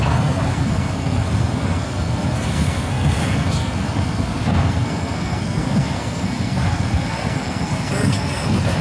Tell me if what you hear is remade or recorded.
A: remade